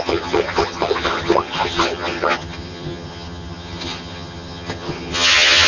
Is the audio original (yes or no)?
no